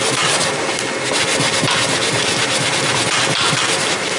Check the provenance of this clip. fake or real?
real